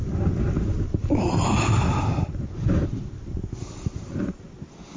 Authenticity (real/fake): real